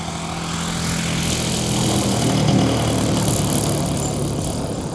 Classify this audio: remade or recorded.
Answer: recorded